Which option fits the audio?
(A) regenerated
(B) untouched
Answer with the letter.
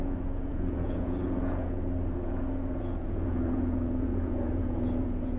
A